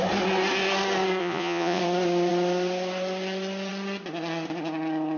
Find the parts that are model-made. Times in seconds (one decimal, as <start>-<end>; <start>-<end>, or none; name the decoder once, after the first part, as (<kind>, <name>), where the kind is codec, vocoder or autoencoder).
1.2-1.8 (vocoder, Vocos)